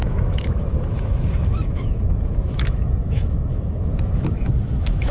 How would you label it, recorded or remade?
remade